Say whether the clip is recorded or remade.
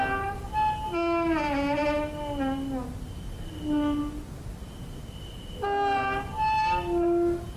recorded